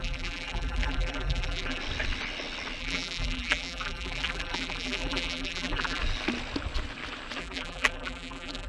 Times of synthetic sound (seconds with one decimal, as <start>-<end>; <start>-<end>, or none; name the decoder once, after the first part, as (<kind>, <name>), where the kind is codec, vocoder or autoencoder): 0.0-1.8 (vocoder, BigVGAN v2); 2.8-6.0; 7.4-8.7